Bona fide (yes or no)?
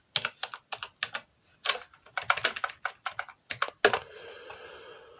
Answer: yes